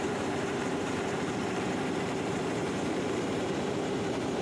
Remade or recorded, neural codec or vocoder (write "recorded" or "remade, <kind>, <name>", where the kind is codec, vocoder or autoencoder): remade, vocoder, BigVGAN v2